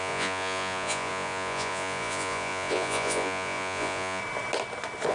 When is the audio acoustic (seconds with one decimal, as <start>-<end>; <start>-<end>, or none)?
4.2-5.1